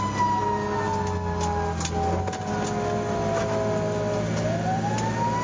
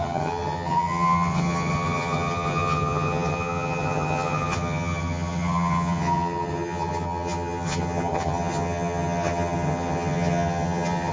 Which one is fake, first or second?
second